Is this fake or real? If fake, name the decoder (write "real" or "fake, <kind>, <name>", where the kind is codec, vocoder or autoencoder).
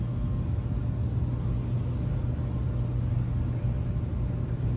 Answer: real